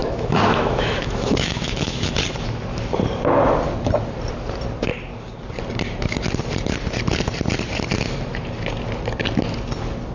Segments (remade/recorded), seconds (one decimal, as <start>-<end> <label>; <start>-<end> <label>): 0.0-2.1 remade; 2.1-10.1 recorded